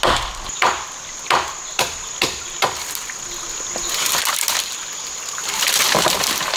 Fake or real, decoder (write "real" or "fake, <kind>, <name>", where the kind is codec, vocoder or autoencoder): real